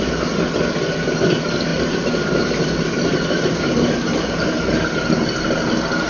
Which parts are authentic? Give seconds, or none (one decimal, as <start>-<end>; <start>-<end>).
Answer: 0.0-1.7; 4.6-6.1